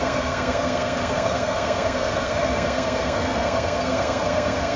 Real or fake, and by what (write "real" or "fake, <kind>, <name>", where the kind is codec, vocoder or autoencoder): fake, codec, SNAC